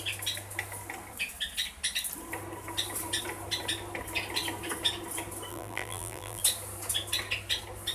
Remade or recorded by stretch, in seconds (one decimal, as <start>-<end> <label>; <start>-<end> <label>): 0.0-5.5 recorded; 5.5-6.4 remade; 6.4-7.9 recorded